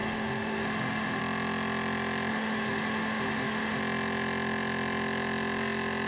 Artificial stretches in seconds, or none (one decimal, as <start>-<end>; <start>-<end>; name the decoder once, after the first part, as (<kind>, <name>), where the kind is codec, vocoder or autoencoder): 0.0-1.2 (autoencoder, DAC-VAE); 2.3-3.8

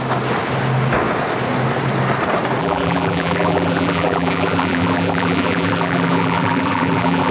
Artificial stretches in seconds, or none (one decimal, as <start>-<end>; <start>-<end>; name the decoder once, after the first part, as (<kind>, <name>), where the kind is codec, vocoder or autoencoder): 2.6-7.3 (vocoder, BigVGAN v2)

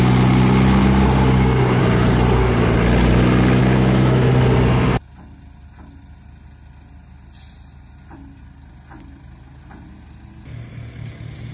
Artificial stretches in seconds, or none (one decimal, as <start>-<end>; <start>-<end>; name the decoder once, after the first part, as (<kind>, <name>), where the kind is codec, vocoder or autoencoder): 0.8-1.8 (codec, DAC); 3.6-4.3